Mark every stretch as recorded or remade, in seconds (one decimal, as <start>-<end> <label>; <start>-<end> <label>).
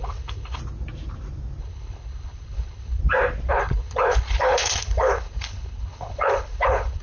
0.0-0.6 remade; 0.6-1.6 recorded; 1.6-3.0 remade; 3.0-3.5 recorded; 3.5-7.0 remade